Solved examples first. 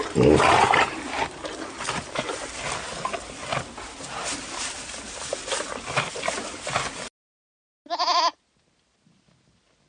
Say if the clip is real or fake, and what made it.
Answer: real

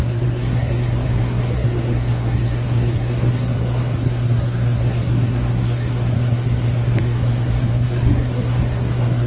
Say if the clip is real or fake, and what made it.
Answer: fake, codec, SNAC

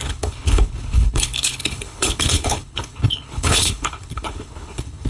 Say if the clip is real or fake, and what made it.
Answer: fake, codec, HILCodec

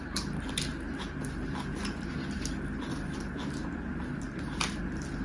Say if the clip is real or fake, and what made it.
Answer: real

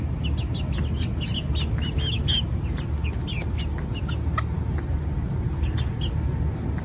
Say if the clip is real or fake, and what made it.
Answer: real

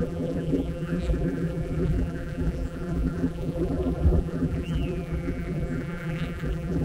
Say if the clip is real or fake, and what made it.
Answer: fake, vocoder, BigVGAN v2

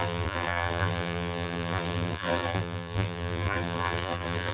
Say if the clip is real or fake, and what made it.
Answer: fake, vocoder, BigVGAN v2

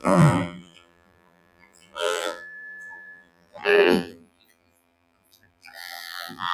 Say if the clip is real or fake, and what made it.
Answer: fake, vocoder, BigVGAN v2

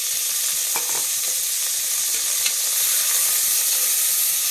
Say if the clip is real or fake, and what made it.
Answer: real